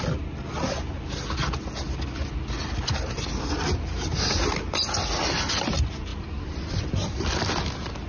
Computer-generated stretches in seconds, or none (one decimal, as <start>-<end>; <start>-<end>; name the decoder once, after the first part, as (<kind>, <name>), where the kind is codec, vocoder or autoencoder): 6.1-7.6 (vocoder, BigVGAN v2)